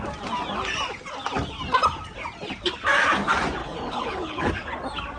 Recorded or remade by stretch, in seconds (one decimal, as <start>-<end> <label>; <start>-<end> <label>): 0.0-3.6 recorded; 3.6-4.5 remade; 4.5-5.2 recorded